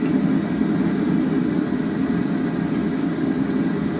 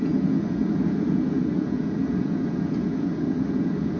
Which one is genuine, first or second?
first